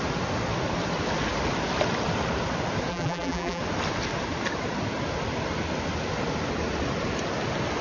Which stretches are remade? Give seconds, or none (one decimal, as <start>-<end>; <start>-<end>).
2.9-3.6